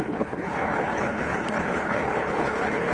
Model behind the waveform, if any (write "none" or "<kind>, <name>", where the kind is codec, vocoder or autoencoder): codec, HILCodec